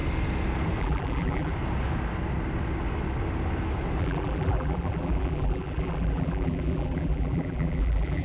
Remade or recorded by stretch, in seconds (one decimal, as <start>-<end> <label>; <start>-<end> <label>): 0.0-0.8 recorded; 0.8-1.5 remade; 1.5-4.0 recorded; 4.0-8.2 remade